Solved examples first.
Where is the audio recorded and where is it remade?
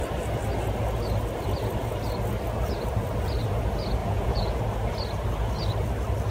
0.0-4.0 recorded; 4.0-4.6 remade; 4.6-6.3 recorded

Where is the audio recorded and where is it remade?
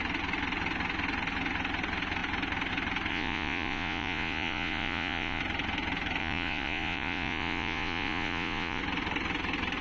0.0-3.1 recorded; 3.1-5.4 remade; 5.4-6.2 recorded; 6.2-8.8 remade; 8.8-9.8 recorded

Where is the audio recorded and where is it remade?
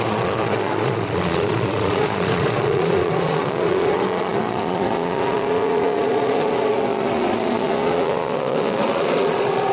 0.0-9.7 remade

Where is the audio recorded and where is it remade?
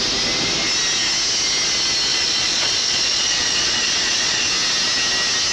0.0-2.1 recorded; 2.1-4.5 remade; 4.5-5.5 recorded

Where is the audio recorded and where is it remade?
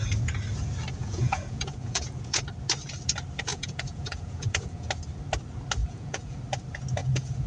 0.0-1.0 recorded; 1.0-2.4 remade; 2.4-3.5 recorded; 3.5-4.9 remade; 4.9-5.8 recorded; 5.8-6.4 remade; 6.4-7.0 recorded; 7.0-7.5 remade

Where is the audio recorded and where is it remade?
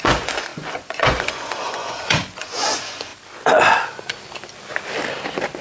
0.0-3.1 remade; 3.1-5.6 recorded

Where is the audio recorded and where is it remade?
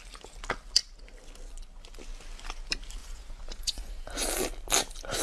0.0-3.0 recorded; 3.0-4.1 remade; 4.1-5.2 recorded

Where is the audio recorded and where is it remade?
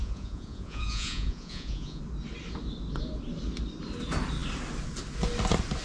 0.0-2.0 remade; 2.0-5.8 recorded